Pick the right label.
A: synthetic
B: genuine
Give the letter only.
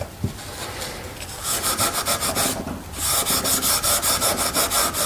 B